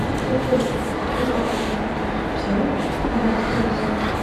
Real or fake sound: real